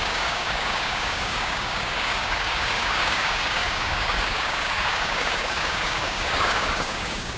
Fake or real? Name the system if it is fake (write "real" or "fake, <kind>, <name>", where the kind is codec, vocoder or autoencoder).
fake, codec, DAC